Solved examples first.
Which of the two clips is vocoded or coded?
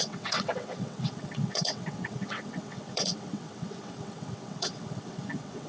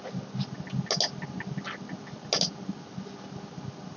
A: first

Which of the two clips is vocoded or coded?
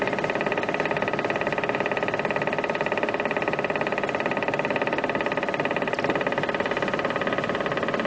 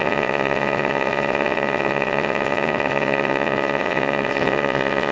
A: second